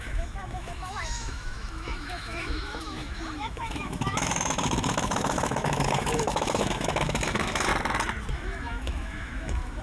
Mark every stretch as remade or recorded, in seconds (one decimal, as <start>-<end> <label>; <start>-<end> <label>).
0.0-7.7 remade; 7.7-8.3 recorded; 8.3-9.8 remade